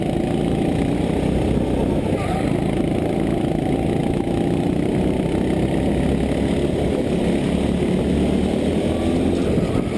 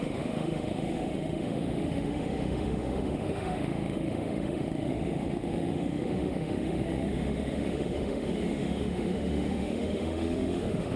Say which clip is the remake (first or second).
second